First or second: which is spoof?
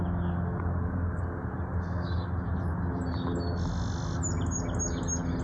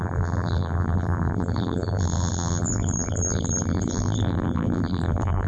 second